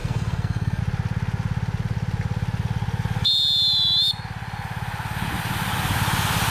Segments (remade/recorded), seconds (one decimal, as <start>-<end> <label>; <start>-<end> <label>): 0.0-0.8 remade; 0.8-6.5 recorded